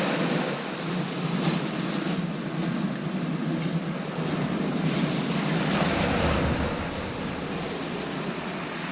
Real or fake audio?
real